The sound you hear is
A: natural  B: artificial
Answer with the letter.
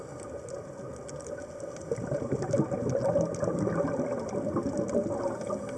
A